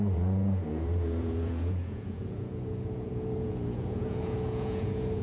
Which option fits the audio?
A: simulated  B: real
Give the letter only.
A